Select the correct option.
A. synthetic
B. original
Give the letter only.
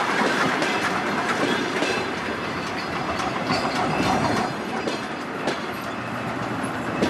A